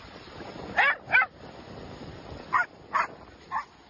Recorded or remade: recorded